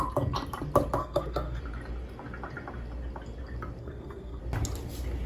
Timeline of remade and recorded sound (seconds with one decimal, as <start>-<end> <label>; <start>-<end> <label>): 0.0-1.0 recorded; 1.0-1.6 remade; 1.6-3.8 recorded; 3.8-4.4 remade; 4.4-5.3 recorded